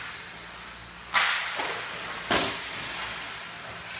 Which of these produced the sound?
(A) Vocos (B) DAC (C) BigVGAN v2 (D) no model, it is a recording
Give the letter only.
D